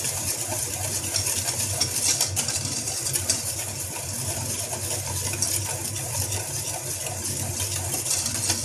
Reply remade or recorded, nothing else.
recorded